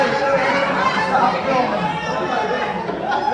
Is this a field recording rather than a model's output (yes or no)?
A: yes